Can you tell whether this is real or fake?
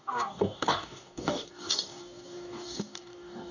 fake